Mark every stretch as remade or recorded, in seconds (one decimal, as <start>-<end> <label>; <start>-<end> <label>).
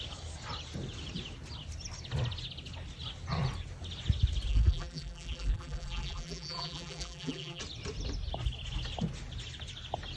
0.0-4.5 recorded; 4.5-7.6 remade; 7.6-10.2 recorded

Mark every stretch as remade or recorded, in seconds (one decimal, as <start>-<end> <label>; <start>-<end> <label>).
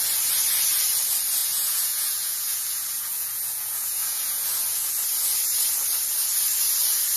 0.0-1.4 recorded; 1.4-4.9 remade; 4.9-7.2 recorded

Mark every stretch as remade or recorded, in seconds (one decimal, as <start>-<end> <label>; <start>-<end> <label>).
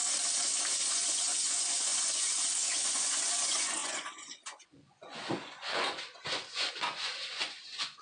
0.0-0.9 recorded; 0.9-8.0 remade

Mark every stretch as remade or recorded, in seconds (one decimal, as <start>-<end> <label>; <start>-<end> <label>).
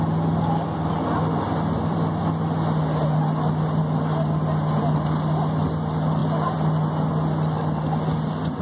0.0-8.6 recorded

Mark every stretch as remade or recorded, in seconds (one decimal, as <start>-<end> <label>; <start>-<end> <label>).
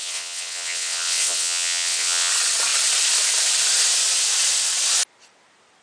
0.0-2.3 remade; 2.3-5.8 recorded